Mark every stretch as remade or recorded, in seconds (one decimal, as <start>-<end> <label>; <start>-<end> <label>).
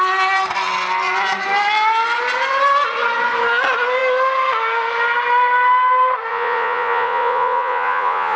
0.0-6.3 recorded; 6.3-8.4 remade